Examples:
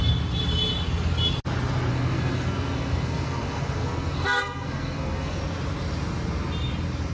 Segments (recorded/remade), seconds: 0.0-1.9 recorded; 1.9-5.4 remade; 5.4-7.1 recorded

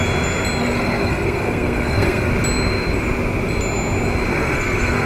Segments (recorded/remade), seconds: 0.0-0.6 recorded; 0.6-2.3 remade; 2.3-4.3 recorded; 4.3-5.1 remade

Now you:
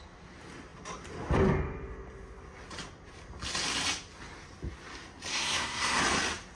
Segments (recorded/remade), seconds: 0.0-5.3 recorded; 5.3-6.0 remade; 6.0-6.5 recorded

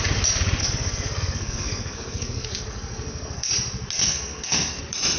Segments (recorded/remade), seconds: 0.0-0.6 recorded; 0.6-3.5 remade; 3.5-4.0 recorded; 4.0-4.8 remade; 4.8-5.2 recorded